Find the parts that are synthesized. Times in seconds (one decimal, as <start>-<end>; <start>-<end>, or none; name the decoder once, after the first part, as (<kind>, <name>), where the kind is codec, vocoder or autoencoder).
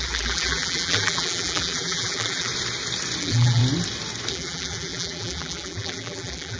0.0-2.5 (vocoder, BigVGAN v2); 3.2-3.6; 4.3-6.6